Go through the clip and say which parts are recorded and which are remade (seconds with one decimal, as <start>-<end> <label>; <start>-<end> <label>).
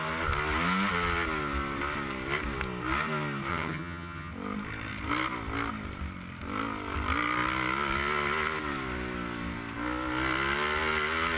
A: 0.0-3.5 recorded; 3.5-4.3 remade; 4.3-11.4 recorded